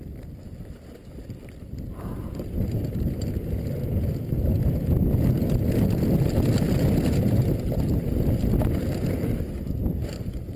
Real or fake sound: real